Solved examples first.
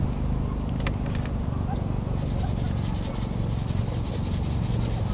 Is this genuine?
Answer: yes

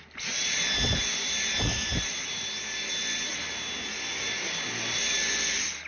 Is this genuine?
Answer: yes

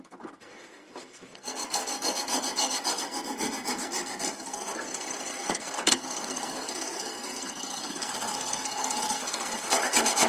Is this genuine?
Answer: no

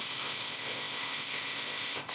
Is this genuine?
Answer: no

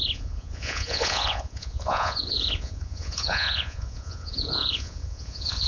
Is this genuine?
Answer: no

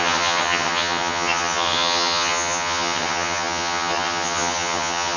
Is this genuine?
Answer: no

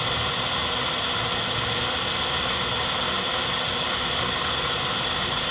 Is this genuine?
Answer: yes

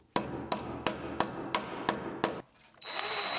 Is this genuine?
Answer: yes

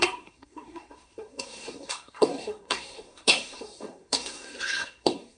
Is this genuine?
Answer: no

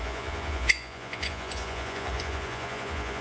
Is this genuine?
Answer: no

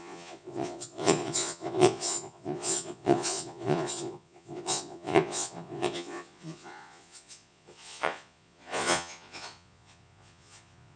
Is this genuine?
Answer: no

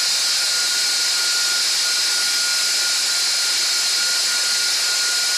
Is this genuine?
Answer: yes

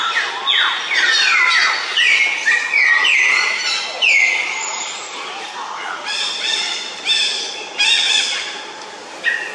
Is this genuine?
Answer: yes